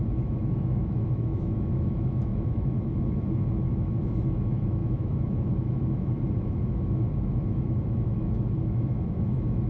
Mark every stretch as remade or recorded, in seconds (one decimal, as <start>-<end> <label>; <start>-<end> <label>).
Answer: 0.0-9.7 remade